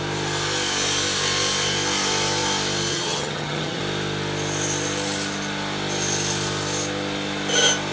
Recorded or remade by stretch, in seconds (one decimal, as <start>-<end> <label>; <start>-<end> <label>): 0.0-2.9 recorded; 2.9-3.8 remade; 3.8-7.9 recorded